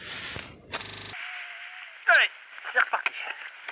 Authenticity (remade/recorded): recorded